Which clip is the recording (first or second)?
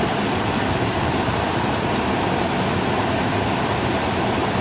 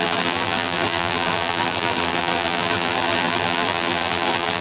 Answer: first